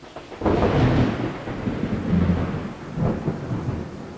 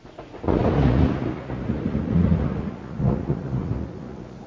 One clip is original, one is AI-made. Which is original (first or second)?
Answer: first